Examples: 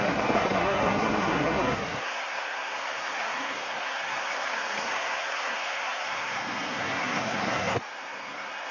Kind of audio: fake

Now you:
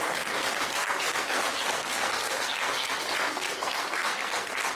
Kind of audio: fake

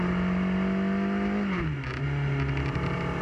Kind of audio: real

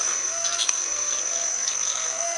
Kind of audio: fake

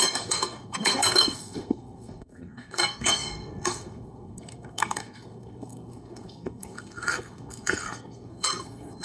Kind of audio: fake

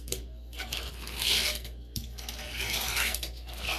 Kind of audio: fake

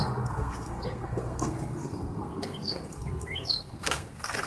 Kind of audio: fake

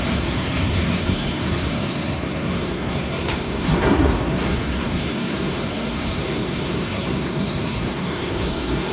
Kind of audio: fake